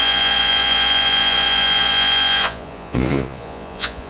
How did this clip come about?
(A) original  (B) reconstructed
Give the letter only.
B